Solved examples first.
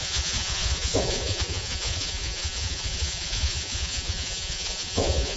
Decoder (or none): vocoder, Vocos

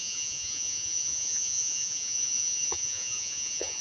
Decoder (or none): vocoder, Vocos